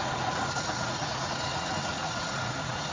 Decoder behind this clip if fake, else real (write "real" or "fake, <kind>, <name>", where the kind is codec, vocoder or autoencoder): fake, vocoder, Vocos